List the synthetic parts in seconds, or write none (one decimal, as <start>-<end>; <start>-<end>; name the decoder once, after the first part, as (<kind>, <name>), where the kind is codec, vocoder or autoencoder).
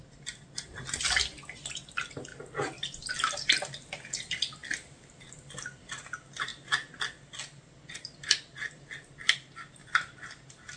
none